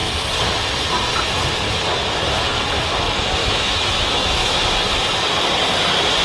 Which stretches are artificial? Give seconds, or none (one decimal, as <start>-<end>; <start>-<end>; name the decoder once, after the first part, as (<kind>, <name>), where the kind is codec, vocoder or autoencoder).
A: 3.4-4.6 (autoencoder, DAC-VAE)